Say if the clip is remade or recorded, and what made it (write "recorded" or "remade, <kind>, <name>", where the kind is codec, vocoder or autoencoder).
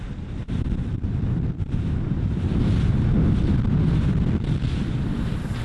recorded